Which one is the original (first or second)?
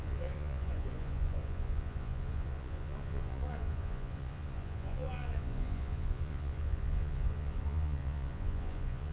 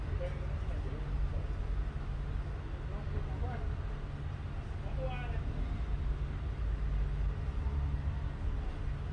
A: second